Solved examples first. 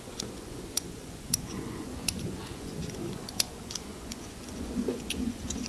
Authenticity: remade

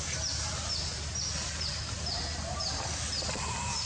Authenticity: recorded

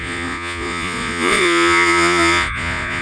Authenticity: remade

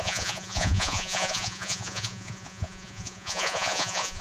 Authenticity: remade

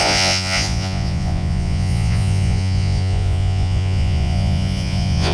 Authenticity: remade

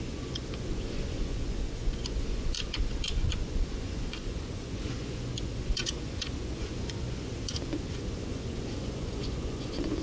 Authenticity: remade